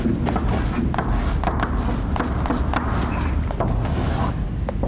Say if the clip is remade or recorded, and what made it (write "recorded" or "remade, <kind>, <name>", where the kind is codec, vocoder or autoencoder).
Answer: recorded